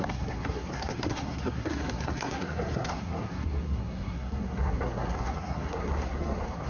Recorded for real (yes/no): no